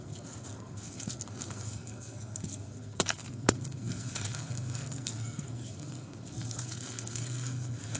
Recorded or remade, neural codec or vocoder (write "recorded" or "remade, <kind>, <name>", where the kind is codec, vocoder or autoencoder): remade, codec, SNAC